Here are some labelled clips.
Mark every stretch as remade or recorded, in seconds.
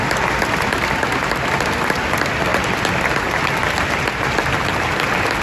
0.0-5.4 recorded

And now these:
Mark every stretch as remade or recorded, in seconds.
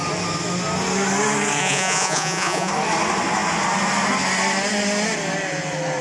0.0-1.6 recorded; 1.6-2.7 remade; 2.7-6.0 recorded